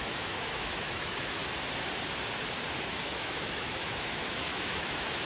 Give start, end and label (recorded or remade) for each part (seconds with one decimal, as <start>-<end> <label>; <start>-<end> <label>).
0.0-1.4 remade; 1.4-2.8 recorded; 2.8-5.3 remade